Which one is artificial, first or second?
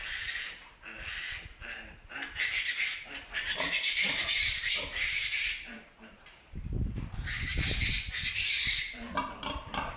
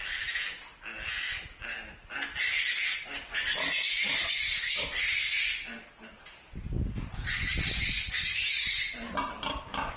first